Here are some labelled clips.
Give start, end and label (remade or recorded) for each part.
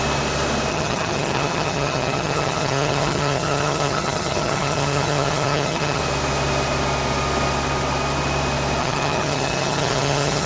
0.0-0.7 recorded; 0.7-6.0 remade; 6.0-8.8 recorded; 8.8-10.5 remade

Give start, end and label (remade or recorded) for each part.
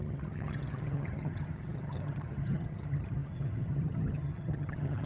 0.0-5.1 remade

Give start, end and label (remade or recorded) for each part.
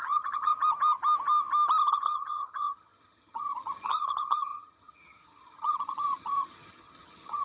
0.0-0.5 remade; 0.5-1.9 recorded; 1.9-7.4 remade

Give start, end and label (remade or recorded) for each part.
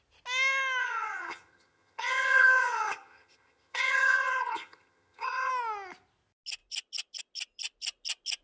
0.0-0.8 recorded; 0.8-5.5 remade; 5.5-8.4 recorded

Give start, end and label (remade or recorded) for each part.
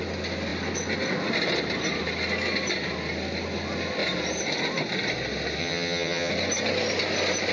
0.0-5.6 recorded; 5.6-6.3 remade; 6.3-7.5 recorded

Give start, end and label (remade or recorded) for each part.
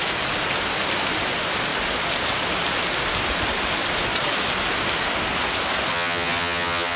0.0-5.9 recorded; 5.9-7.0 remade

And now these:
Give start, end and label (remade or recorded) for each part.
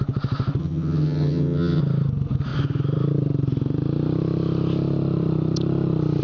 0.0-0.6 recorded; 0.6-1.8 remade; 1.8-6.2 recorded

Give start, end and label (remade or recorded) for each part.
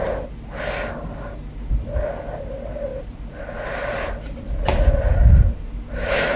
0.0-6.4 recorded